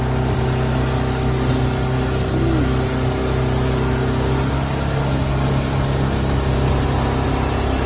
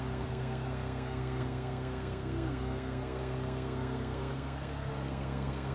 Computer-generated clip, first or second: second